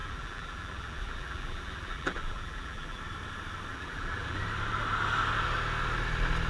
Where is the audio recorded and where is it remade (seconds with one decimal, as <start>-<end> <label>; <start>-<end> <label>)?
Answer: 0.0-3.0 remade; 3.0-3.7 recorded; 3.7-4.4 remade; 4.4-6.5 recorded